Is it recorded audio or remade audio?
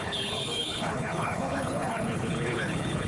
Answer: remade